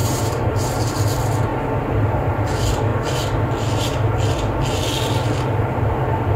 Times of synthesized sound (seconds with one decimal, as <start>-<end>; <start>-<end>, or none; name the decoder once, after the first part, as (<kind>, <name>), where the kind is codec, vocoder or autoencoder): 0.0-0.9 (vocoder, BigVGAN v2)